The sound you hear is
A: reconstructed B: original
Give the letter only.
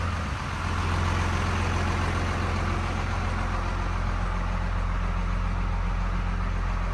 B